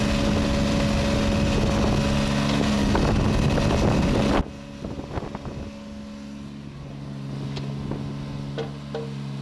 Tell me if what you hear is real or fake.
real